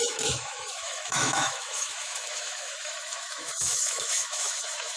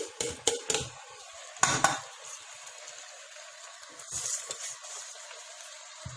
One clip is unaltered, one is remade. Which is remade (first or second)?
first